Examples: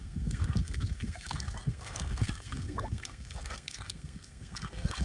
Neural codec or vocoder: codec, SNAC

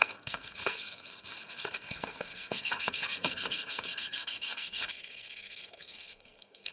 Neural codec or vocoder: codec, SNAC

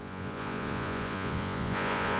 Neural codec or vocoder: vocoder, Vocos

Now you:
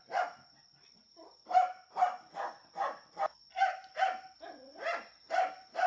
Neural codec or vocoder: none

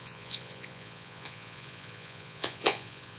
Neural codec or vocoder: vocoder, Vocos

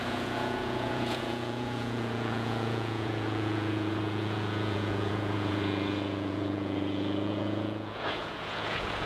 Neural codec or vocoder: vocoder, Vocos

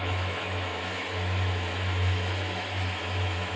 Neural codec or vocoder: autoencoder, DAC-VAE